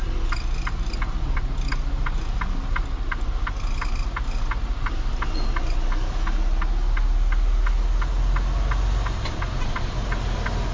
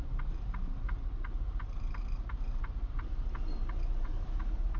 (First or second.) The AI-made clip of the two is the second